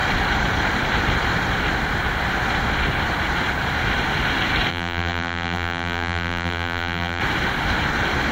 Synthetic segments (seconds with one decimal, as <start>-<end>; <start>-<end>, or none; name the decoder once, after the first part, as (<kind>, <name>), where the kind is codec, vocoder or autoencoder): 4.7-7.2 (vocoder, BigVGAN v2)